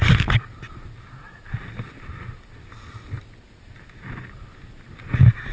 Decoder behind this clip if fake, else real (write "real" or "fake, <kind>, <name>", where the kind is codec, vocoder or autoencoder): real